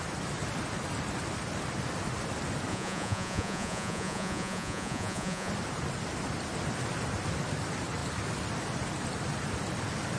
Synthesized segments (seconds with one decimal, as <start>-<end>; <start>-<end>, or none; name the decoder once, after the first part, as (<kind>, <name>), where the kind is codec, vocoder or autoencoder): 2.7-5.5 (vocoder, Vocos)